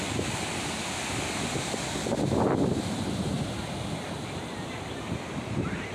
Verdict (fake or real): real